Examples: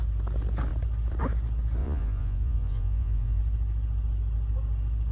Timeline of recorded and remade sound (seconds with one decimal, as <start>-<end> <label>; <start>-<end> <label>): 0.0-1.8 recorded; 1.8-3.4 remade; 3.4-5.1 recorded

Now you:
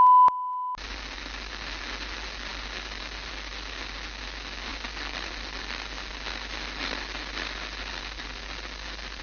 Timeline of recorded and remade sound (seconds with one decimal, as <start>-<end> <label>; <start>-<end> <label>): 0.0-9.2 recorded

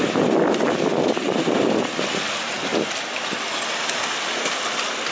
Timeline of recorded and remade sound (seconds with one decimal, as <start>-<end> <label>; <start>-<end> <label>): 0.0-5.1 recorded